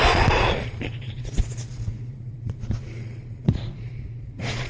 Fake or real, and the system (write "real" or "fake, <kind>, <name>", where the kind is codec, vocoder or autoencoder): fake, vocoder, Vocos